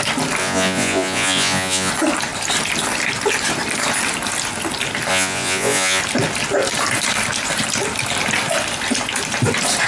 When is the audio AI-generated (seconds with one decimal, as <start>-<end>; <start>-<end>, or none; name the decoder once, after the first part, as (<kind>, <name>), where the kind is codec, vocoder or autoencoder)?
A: 0.4-1.9 (vocoder, Vocos); 5.1-6.0